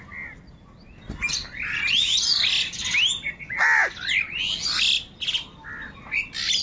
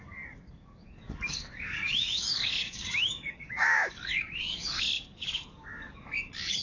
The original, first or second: first